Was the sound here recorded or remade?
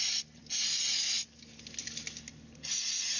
recorded